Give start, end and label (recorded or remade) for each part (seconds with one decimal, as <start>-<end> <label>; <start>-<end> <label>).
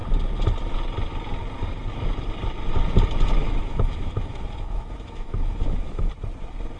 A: 0.0-3.4 recorded; 3.4-6.1 remade; 6.1-6.8 recorded